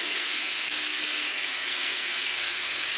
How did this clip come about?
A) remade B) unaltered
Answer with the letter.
A